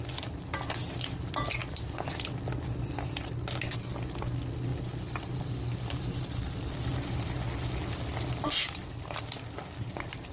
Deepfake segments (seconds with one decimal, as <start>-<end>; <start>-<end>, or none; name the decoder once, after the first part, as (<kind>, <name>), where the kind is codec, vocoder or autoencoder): none